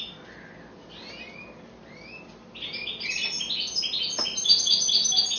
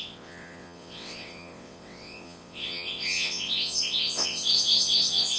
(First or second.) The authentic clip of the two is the first